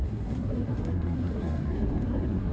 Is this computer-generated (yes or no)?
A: yes